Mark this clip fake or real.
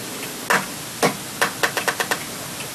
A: real